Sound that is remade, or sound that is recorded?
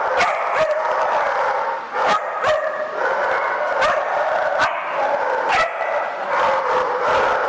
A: remade